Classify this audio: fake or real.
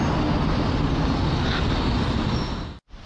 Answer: real